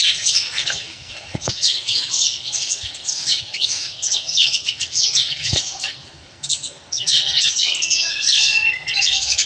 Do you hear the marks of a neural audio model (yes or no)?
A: yes